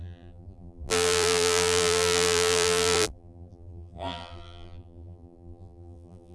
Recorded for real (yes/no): no